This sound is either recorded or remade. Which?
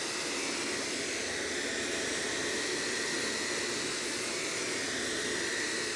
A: recorded